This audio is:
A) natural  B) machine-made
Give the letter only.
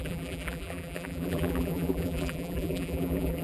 B